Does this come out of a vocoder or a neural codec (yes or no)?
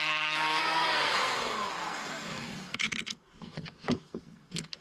yes